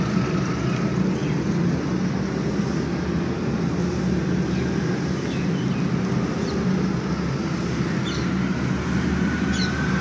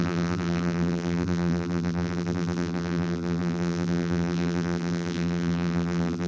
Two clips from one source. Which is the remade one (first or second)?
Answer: second